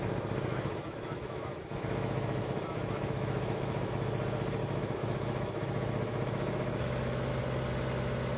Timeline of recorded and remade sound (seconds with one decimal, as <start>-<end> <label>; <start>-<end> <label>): 0.0-0.5 recorded; 0.5-3.9 remade; 3.9-4.6 recorded; 4.6-7.3 remade; 7.3-8.4 recorded